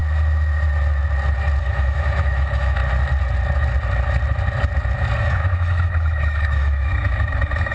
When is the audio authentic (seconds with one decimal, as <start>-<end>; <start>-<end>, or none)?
0.0-1.6; 2.8-5.3